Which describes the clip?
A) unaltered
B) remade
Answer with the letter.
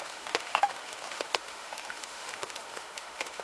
B